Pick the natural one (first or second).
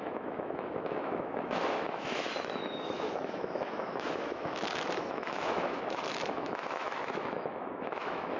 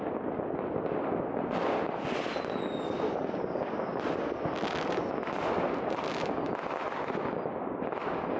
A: second